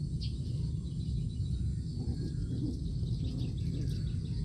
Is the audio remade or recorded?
recorded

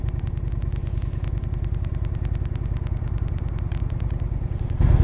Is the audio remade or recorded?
recorded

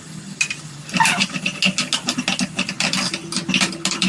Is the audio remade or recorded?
recorded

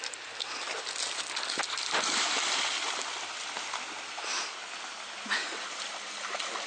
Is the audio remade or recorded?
recorded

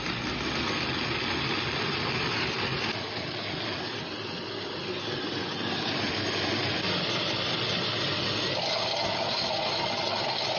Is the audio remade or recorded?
recorded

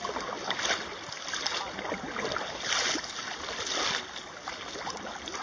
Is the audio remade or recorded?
recorded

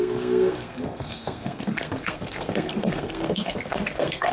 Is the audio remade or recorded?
remade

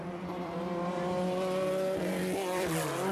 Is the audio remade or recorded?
remade